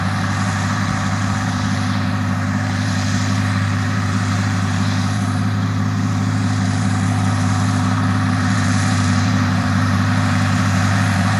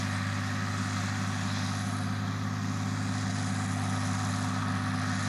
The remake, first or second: first